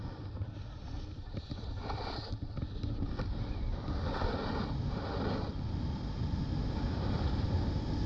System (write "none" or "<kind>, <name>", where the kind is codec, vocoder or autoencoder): none